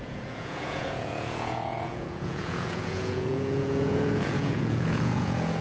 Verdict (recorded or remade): remade